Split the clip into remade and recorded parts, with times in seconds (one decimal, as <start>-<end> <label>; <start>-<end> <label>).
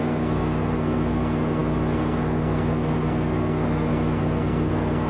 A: 0.0-5.1 remade